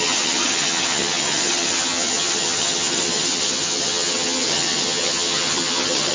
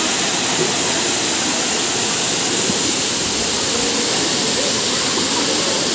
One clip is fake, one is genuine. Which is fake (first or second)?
first